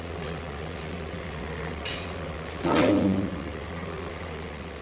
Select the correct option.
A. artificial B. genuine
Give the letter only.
A